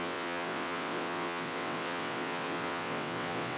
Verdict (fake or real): fake